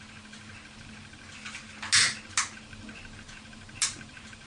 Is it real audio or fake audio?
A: real